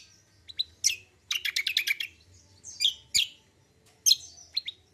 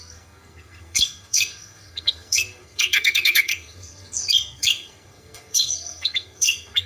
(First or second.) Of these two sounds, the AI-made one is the second